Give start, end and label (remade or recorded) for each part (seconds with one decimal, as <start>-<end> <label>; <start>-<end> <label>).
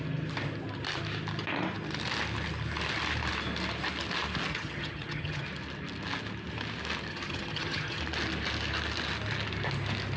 0.0-4.5 recorded; 4.5-5.4 remade; 5.4-7.1 recorded; 7.1-8.0 remade; 8.0-10.2 recorded